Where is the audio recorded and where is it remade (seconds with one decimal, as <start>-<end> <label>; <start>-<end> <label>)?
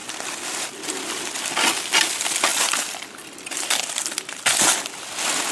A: 0.0-0.7 remade; 0.7-2.5 recorded; 2.5-4.4 remade; 4.4-5.5 recorded